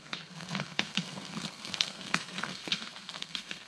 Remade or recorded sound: remade